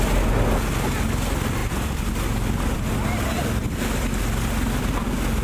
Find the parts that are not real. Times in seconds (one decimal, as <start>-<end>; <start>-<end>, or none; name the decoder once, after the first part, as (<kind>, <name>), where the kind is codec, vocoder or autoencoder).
none